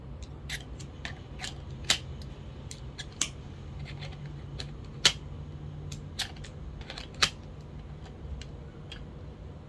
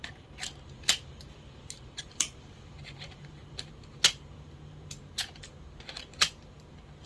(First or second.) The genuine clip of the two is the first